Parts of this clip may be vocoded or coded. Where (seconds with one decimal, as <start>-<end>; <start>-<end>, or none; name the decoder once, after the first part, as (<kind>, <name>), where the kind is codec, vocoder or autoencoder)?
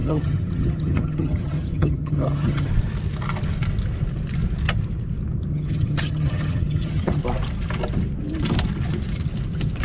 0.0-2.7 (vocoder, HiFi-GAN); 5.5-7.2